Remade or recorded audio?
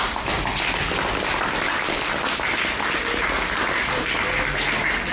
recorded